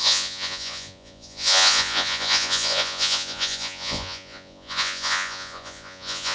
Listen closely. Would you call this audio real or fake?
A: fake